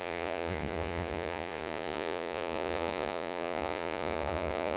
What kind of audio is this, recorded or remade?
remade